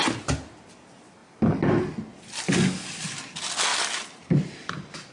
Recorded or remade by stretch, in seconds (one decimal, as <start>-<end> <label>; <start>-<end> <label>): 0.0-5.1 recorded